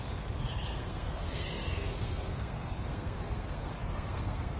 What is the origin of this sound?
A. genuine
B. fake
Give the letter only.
B